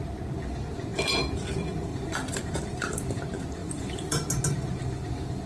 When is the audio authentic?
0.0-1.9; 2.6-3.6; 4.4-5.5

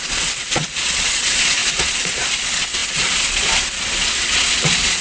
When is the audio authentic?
none

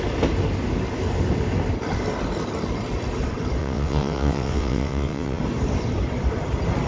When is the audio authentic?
0.0-3.6; 5.4-6.9

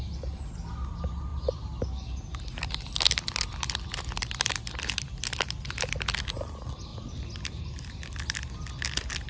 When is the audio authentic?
0.0-9.3

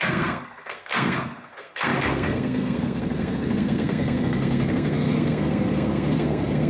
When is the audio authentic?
none

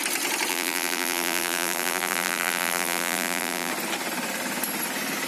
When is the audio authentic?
0.0-0.5; 3.7-5.3

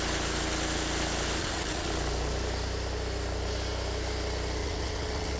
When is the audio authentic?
0.0-1.4; 1.9-4.6